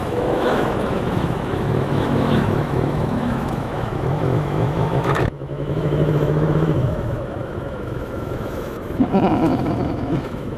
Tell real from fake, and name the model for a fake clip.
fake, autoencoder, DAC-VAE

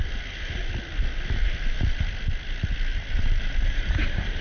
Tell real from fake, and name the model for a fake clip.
real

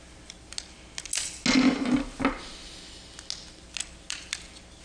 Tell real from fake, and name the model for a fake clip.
real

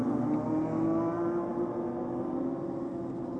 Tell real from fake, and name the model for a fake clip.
real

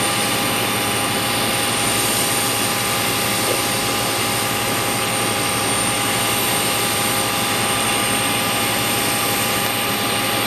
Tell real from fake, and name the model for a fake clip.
real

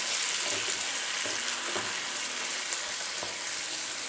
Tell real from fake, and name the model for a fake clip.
real